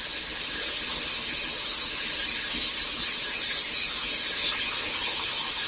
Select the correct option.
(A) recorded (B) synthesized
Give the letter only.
A